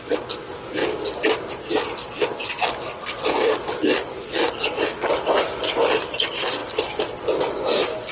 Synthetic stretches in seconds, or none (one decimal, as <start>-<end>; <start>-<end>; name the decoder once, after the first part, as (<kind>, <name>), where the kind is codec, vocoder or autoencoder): 6.6-7.4 (vocoder, BigVGAN v2)